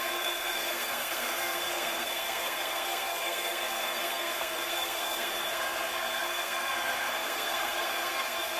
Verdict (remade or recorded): remade